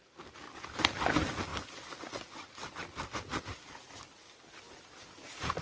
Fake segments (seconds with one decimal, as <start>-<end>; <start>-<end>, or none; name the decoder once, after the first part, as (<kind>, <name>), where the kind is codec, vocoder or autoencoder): none